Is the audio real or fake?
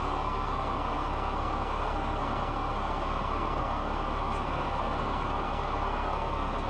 fake